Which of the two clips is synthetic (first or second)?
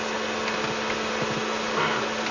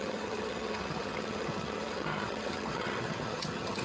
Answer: second